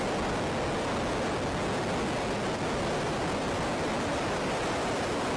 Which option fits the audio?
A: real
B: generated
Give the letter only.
A